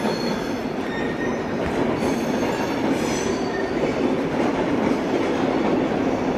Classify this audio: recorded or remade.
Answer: recorded